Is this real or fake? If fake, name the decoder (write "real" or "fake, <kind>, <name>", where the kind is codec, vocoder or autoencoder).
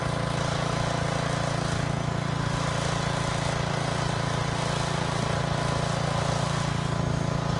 real